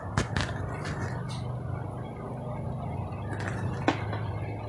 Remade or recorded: recorded